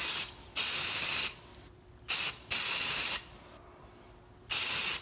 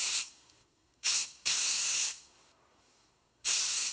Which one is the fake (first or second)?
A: second